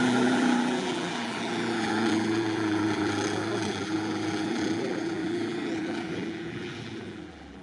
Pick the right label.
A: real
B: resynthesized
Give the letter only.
B